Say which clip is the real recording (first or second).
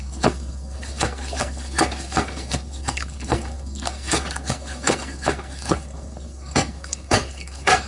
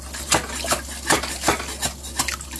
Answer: second